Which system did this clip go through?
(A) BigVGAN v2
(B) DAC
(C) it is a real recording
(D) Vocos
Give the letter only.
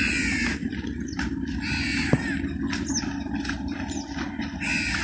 C